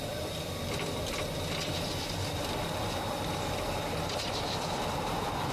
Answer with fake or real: real